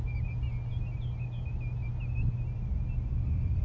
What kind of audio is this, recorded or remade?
recorded